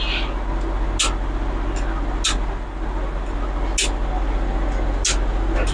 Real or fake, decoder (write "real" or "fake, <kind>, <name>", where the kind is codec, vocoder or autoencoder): real